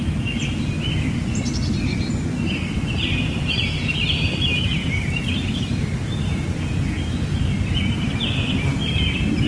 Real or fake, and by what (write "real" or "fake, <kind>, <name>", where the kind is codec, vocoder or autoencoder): real